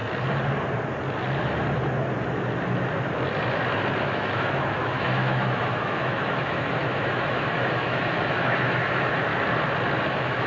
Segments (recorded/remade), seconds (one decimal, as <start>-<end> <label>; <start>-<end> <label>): 0.0-4.0 recorded; 4.0-9.3 remade; 9.3-10.1 recorded; 10.1-10.5 remade